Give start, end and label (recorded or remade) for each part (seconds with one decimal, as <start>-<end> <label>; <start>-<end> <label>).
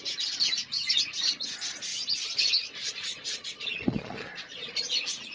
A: 0.0-1.9 recorded; 1.9-4.7 remade; 4.7-5.3 recorded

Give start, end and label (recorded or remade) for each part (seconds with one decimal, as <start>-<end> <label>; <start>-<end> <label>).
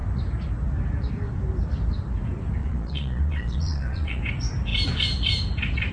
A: 0.0-2.6 recorded; 2.6-4.2 remade; 4.2-5.9 recorded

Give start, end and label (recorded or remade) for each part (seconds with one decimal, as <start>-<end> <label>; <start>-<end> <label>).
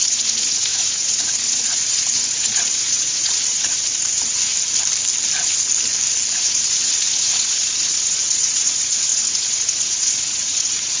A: 0.0-4.5 remade; 4.5-6.3 recorded; 6.3-11.0 remade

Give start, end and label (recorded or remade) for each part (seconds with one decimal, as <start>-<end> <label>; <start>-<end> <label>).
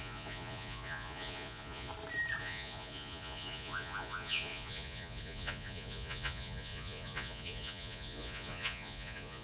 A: 0.0-1.9 remade; 1.9-2.4 recorded; 2.4-9.4 remade